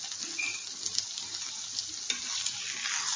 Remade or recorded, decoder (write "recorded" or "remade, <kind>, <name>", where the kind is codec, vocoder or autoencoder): recorded